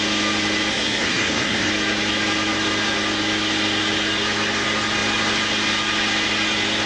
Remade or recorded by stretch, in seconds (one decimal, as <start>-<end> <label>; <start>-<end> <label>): 0.0-0.7 recorded; 0.7-1.7 remade; 1.7-6.9 recorded